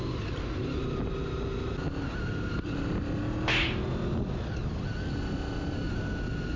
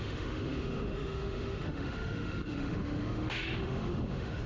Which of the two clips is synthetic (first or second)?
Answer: second